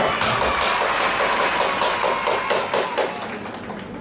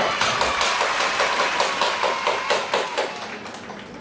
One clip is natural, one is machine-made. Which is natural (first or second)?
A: first